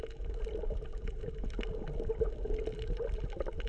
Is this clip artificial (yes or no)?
no